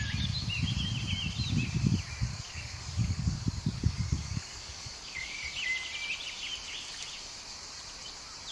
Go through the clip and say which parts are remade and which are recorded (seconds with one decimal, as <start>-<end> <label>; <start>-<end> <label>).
0.0-2.3 recorded; 2.3-5.4 remade; 5.4-8.5 recorded